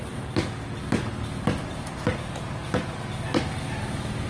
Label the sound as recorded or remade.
recorded